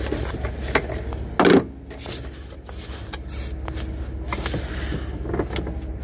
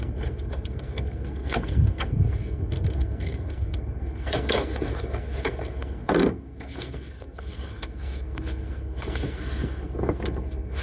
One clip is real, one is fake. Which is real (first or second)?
first